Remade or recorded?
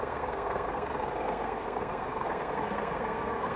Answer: remade